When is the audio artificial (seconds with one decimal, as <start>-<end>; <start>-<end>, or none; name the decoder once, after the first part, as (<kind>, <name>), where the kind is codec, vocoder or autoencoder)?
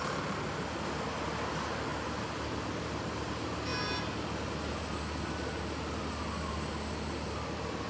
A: none